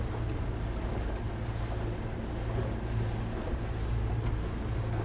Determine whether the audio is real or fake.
real